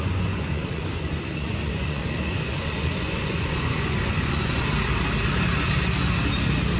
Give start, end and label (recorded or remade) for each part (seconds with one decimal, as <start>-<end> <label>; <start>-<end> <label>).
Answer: 0.0-4.7 remade; 4.7-6.8 recorded